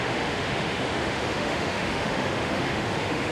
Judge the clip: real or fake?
fake